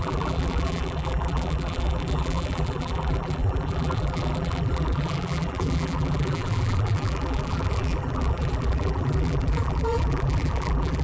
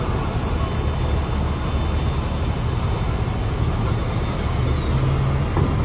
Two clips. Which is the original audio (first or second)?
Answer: second